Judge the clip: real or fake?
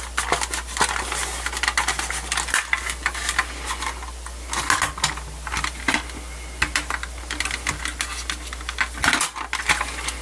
real